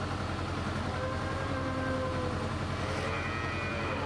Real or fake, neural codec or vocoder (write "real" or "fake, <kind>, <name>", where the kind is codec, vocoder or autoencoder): real